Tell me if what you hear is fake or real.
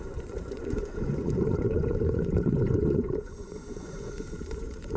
fake